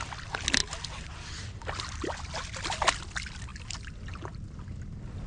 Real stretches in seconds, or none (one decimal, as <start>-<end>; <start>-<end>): 0.0-5.3